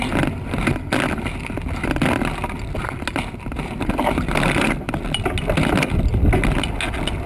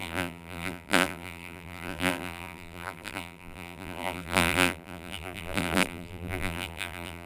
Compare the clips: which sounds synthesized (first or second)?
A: second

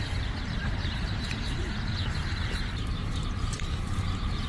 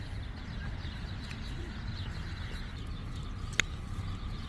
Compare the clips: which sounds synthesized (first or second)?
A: first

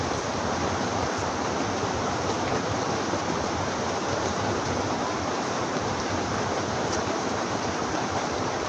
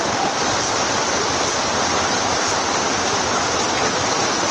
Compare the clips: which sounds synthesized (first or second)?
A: first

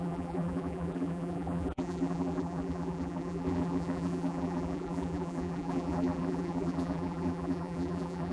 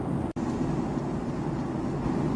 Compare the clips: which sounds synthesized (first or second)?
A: first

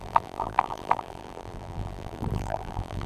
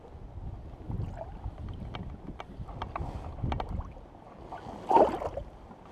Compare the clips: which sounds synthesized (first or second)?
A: first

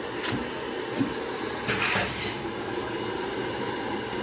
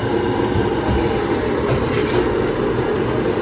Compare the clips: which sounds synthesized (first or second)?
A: first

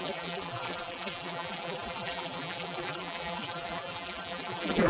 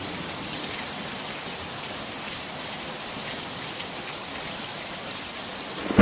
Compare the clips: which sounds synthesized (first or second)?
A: first